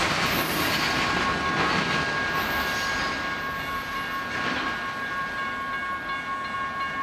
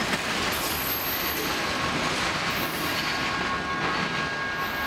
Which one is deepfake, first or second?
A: first